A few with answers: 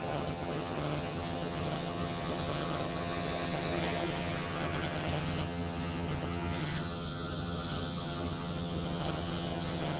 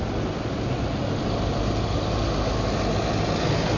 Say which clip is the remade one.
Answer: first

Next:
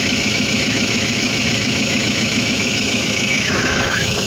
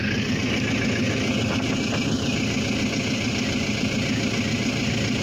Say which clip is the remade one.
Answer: first